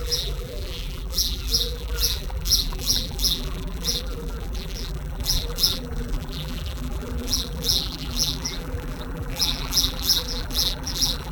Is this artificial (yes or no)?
yes